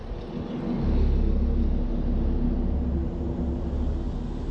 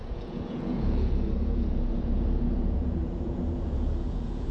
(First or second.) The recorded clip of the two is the first